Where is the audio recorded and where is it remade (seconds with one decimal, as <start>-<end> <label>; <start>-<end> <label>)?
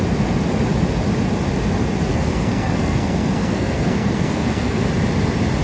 0.0-2.1 recorded; 2.1-4.8 remade; 4.8-5.6 recorded